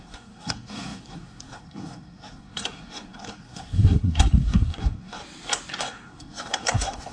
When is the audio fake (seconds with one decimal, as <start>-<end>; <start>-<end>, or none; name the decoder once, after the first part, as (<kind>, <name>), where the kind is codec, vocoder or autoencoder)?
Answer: 0.0-5.2 (codec, SNAC); 5.8-7.1